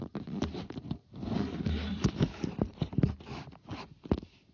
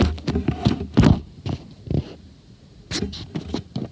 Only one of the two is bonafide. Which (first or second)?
second